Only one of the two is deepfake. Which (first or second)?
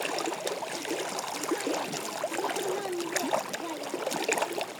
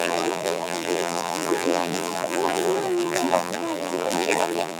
second